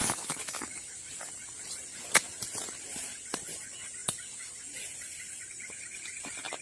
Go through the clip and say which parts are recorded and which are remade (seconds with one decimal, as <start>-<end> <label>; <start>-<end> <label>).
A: 0.0-1.1 remade; 1.1-6.6 recorded